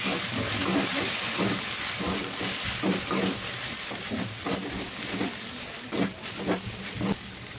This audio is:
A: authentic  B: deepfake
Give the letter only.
A